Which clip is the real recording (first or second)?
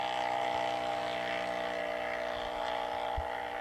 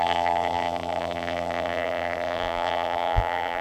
first